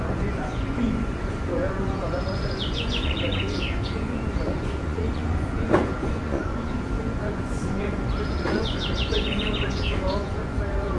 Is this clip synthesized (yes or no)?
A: yes